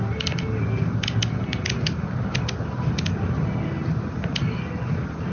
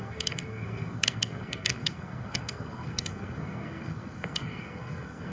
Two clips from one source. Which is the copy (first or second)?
second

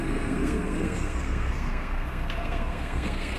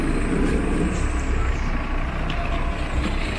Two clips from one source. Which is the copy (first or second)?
first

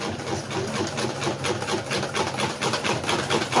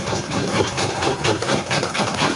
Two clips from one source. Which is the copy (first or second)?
second